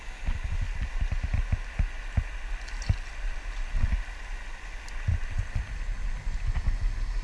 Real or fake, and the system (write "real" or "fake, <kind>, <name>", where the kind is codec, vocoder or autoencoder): real